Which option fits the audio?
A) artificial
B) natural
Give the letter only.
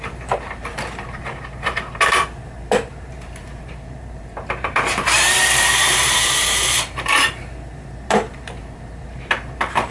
A